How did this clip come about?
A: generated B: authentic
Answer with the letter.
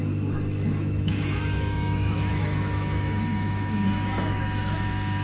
A